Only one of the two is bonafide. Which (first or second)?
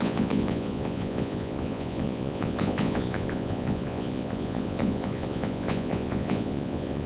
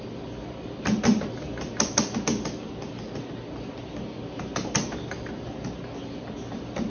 second